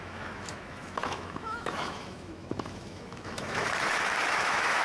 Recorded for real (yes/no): no